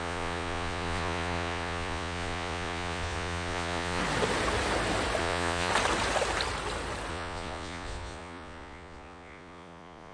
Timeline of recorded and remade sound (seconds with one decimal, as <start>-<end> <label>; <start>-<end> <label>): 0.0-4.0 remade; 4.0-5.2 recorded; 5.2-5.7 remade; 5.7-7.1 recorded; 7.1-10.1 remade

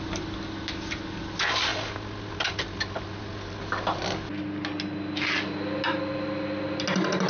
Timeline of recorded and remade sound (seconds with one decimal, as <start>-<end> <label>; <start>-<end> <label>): 0.0-7.3 recorded

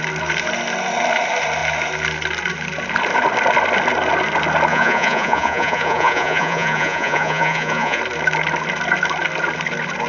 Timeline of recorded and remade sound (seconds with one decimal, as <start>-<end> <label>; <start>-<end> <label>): 0.0-4.7 recorded; 4.7-8.0 remade; 8.0-10.1 recorded

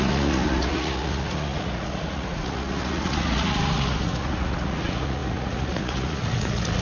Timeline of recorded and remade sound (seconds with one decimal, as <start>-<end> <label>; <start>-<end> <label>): 0.0-6.8 remade

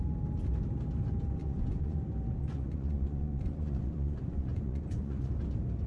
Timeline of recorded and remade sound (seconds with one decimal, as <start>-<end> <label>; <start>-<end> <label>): 0.0-1.4 recorded; 1.4-2.0 remade; 2.0-2.4 recorded; 2.4-5.3 remade; 5.3-5.9 recorded